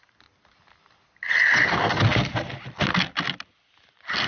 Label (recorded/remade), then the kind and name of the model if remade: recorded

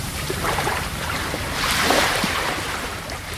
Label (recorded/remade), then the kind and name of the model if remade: remade, vocoder, BigVGAN v2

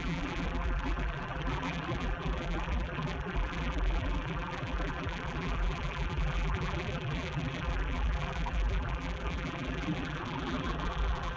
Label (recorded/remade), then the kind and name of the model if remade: remade, vocoder, BigVGAN v2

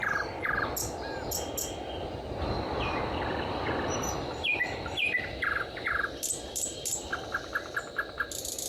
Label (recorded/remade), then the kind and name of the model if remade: recorded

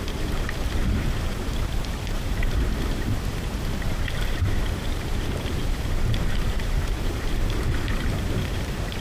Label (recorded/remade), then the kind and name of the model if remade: remade, vocoder, BigVGAN v2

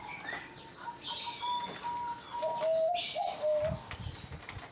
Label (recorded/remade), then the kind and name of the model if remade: recorded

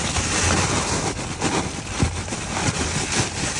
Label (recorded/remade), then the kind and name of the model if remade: remade, vocoder, BigVGAN v2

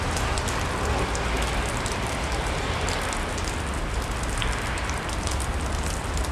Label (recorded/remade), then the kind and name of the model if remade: recorded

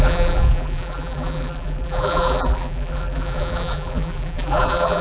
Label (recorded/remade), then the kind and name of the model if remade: remade, vocoder, BigVGAN v2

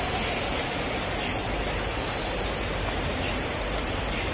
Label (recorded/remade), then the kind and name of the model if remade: recorded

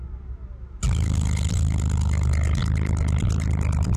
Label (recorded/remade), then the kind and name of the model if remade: recorded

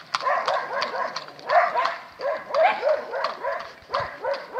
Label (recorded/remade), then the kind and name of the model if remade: recorded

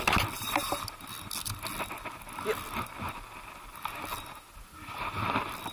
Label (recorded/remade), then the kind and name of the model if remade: recorded